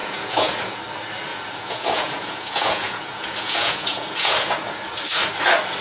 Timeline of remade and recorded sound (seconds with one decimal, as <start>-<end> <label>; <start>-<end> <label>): 0.0-0.8 remade; 0.8-1.3 recorded; 1.3-4.8 remade; 4.8-5.8 recorded